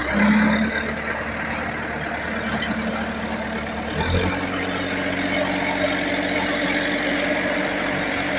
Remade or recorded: recorded